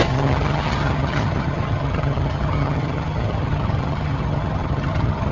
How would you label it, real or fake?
fake